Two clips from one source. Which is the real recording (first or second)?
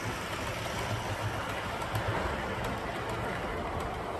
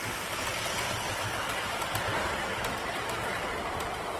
first